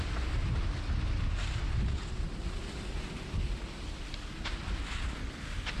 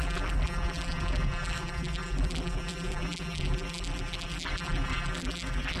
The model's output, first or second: second